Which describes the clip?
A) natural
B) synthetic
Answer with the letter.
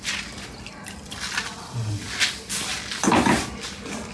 A